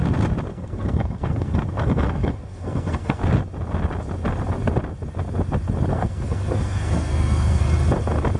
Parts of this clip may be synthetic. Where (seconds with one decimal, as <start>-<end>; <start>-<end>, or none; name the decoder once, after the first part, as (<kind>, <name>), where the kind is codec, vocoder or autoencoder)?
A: 0.5-3.2 (codec, SNAC); 5.9-7.6